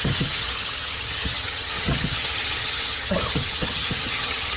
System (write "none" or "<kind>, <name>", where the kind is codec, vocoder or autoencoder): vocoder, HiFi-GAN